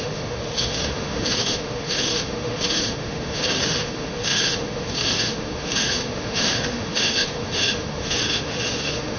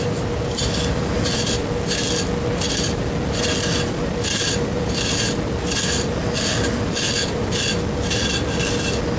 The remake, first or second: first